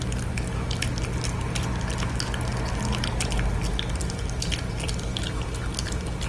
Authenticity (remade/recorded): recorded